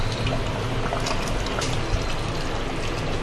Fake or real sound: real